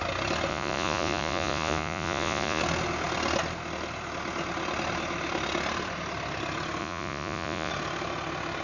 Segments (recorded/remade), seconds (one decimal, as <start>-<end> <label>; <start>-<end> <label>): 0.0-0.5 recorded; 0.5-2.6 remade; 2.6-6.8 recorded; 6.8-7.7 remade; 7.7-8.6 recorded